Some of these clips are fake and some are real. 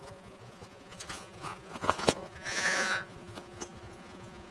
fake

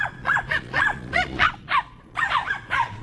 fake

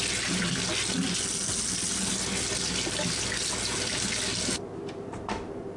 real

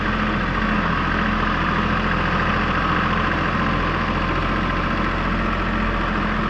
real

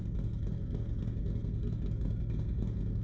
fake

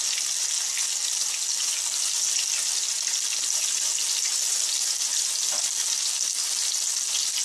real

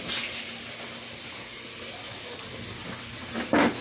real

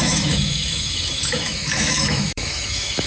fake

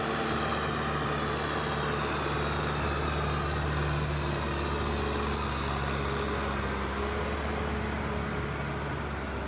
real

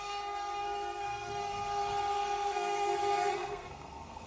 fake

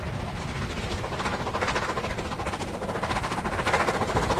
real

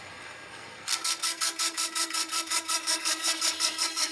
fake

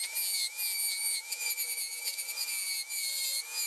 fake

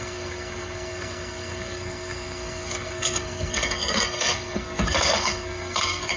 fake